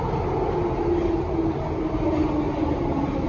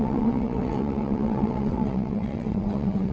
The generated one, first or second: second